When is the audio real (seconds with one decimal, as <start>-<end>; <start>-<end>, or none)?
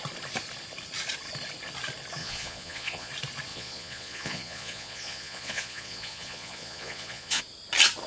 0.0-2.2; 3.1-3.5; 7.4-8.1